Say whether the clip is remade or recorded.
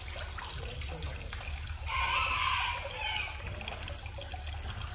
recorded